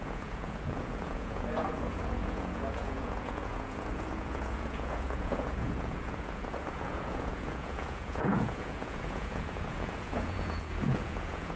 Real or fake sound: fake